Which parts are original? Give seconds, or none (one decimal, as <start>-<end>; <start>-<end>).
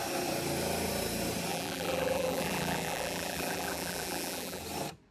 0.0-1.5; 4.6-5.1